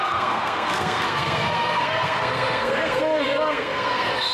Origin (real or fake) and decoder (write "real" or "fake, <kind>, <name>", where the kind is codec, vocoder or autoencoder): fake, codec, SNAC